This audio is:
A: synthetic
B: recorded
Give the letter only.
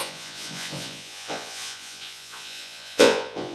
A